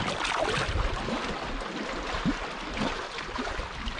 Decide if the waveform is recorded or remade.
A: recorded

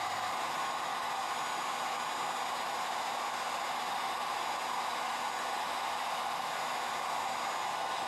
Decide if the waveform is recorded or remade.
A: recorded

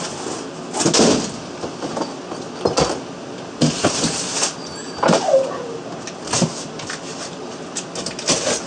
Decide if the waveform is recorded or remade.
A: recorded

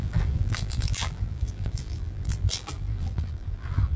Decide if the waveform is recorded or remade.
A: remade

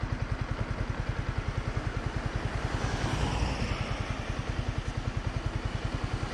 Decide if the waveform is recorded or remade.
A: recorded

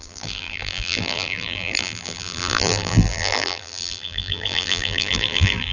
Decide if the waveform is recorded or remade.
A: remade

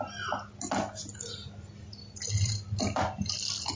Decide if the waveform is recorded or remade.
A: recorded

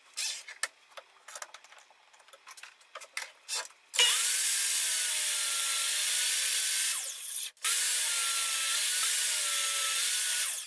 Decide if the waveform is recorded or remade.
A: recorded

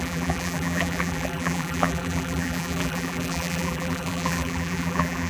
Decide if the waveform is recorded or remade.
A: remade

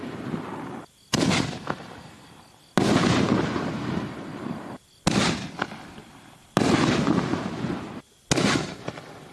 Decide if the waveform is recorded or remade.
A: recorded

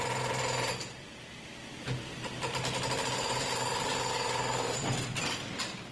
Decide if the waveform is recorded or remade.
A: recorded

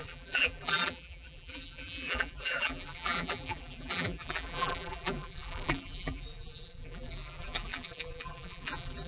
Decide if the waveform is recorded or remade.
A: remade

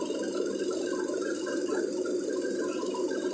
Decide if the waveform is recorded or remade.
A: recorded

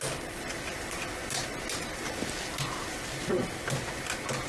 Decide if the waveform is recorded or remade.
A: recorded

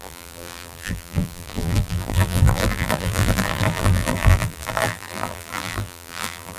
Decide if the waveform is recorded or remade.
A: remade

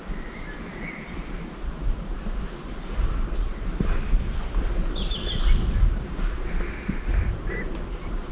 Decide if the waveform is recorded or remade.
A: remade